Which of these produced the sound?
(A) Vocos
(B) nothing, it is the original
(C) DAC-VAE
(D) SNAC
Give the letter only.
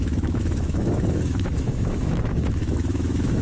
C